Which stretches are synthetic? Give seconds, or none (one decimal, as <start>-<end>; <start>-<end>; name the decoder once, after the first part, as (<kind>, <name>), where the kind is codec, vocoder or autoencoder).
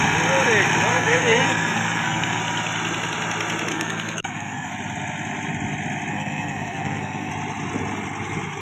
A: 0.9-2.4 (codec, SNAC); 3.7-4.7; 6.1-7.3